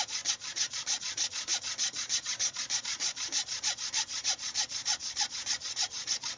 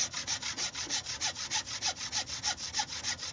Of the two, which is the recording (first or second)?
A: second